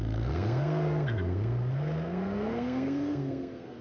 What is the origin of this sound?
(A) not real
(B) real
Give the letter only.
A